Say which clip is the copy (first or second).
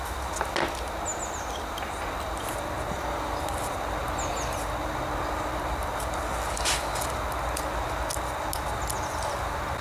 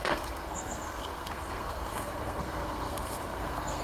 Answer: second